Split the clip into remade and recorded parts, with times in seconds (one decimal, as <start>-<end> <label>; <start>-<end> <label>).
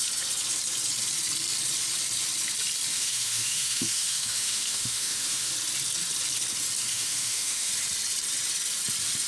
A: 0.0-2.9 recorded; 2.9-5.5 remade; 5.5-6.9 recorded; 6.9-7.7 remade; 7.7-9.3 recorded